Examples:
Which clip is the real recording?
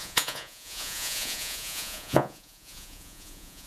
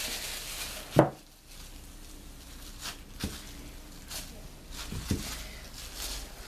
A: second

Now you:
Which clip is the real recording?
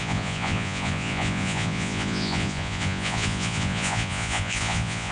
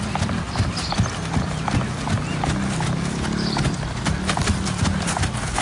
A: second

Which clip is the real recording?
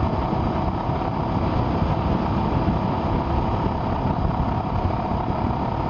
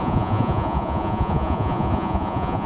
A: first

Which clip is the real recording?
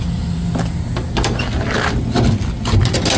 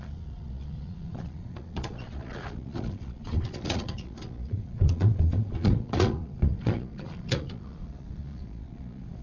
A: first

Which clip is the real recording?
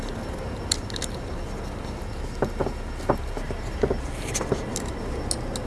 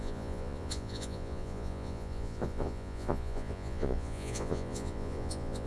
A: first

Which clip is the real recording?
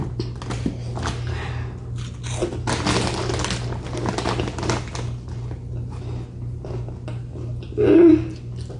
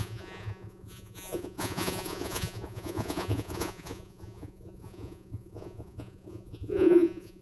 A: first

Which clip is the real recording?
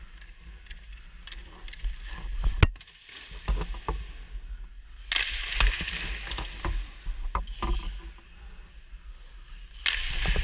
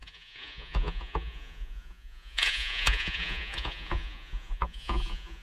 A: first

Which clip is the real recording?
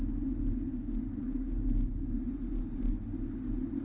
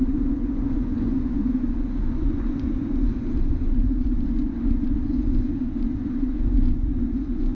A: first